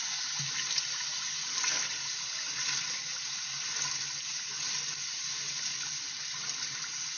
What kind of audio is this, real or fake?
real